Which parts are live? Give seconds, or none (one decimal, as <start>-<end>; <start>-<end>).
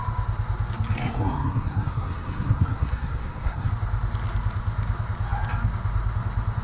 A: 0.0-1.0; 3.7-6.6